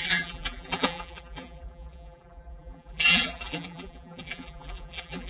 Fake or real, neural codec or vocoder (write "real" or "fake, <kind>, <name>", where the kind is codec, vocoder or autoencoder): fake, vocoder, BigVGAN v2